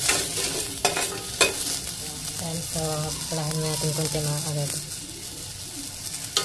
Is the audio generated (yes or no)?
no